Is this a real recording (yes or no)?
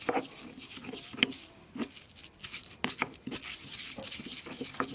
yes